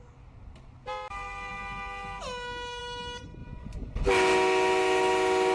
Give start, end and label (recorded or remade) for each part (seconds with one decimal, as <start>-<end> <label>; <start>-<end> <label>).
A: 0.0-3.4 recorded; 3.4-4.0 remade; 4.0-5.5 recorded